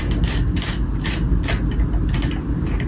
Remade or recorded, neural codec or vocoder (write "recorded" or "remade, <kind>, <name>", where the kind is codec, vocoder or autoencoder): recorded